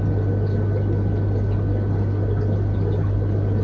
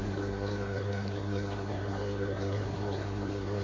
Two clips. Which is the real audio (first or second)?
first